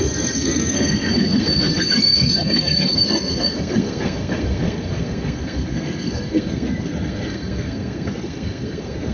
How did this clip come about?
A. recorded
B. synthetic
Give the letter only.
B